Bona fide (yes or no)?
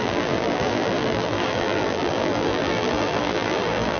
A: no